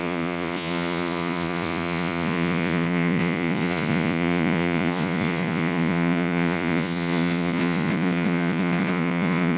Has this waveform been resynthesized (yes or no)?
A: yes